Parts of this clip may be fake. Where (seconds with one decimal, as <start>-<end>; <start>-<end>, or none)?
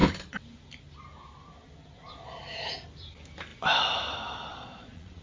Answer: 4.5-5.2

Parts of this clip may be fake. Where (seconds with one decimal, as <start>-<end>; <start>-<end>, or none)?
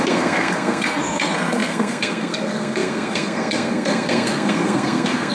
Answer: 0.0-5.3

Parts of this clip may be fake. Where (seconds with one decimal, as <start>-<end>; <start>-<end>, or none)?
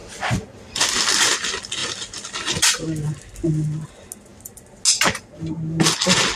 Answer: none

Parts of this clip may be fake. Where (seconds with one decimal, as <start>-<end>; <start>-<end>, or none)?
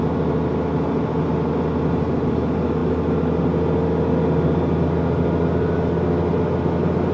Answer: none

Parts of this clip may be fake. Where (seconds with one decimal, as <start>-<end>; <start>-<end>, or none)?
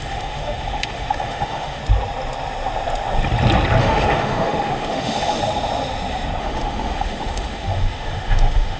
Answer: 0.0-1.8; 3.8-5.4; 6.4-8.8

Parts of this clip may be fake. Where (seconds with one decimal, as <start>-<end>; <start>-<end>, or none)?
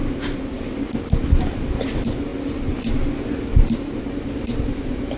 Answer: none